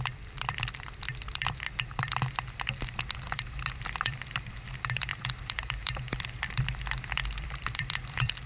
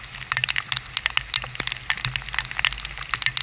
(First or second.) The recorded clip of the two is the second